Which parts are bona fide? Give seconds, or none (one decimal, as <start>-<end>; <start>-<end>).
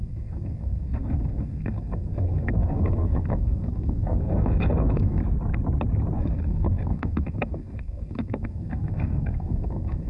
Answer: 5.2-6.2